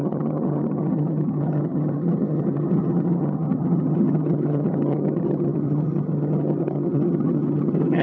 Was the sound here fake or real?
fake